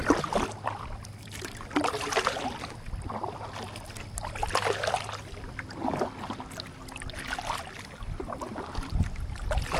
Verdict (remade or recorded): recorded